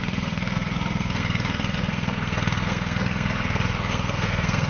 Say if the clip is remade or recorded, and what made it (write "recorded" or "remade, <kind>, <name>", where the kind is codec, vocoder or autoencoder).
remade, codec, SNAC